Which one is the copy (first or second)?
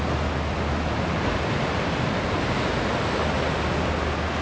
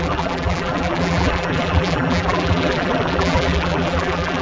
second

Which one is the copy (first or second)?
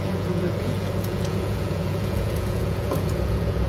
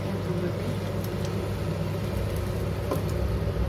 first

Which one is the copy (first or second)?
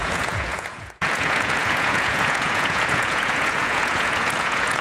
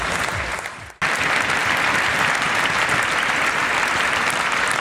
first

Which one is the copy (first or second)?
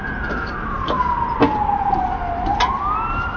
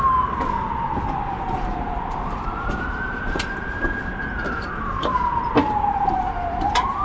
second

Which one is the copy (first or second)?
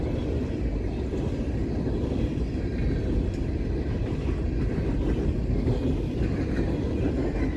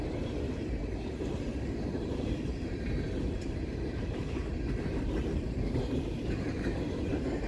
second